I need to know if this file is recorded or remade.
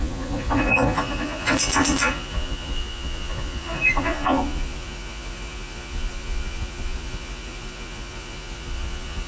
remade